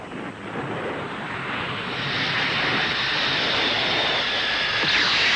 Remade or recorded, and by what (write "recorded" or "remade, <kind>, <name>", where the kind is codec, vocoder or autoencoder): remade, vocoder, BigVGAN v2